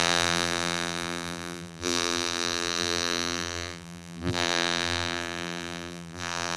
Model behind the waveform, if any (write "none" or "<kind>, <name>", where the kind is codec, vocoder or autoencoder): vocoder, BigVGAN v2